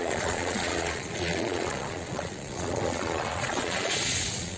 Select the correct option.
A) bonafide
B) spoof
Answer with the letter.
B